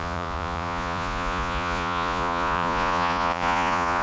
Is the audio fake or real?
fake